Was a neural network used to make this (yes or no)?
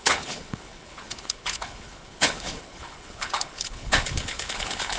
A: yes